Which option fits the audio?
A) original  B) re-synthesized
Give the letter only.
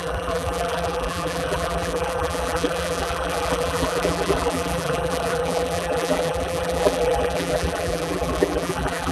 B